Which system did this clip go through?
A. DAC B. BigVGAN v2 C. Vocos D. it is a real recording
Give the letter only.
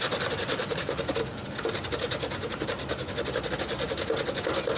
D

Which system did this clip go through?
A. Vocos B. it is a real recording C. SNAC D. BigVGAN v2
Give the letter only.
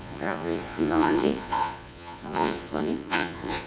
A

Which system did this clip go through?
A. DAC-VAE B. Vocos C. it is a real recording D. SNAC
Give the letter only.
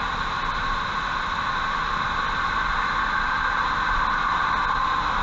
C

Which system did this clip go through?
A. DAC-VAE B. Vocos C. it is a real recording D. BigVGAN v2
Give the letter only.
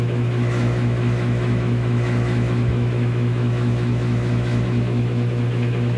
A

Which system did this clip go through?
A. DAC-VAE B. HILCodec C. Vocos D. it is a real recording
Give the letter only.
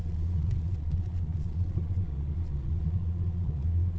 C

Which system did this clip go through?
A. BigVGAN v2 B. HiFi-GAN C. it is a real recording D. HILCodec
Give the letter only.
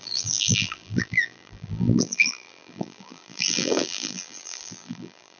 A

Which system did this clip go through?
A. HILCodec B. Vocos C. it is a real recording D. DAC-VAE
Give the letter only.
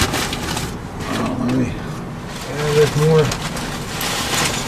C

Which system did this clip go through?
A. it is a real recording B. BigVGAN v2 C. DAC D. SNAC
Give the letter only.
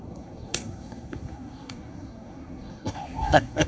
D